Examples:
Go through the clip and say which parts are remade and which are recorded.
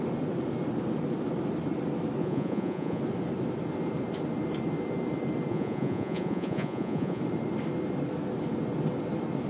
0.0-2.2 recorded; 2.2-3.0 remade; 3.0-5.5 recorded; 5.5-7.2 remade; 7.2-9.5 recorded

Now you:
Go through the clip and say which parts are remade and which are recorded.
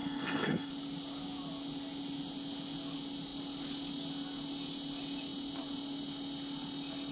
0.0-0.7 remade; 0.7-7.1 recorded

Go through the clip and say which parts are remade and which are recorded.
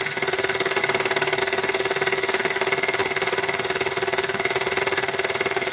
0.0-0.8 remade; 0.8-1.4 recorded; 1.4-5.7 remade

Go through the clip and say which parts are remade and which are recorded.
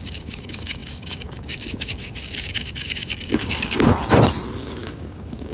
0.0-3.9 remade; 3.9-4.6 recorded; 4.6-5.5 remade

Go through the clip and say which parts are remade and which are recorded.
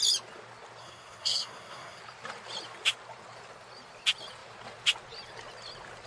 0.0-0.8 recorded; 0.8-2.0 remade; 2.0-6.1 recorded